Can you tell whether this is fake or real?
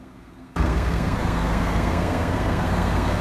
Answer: fake